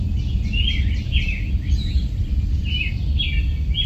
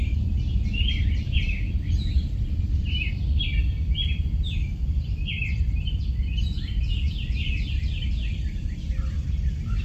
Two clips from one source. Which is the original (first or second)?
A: first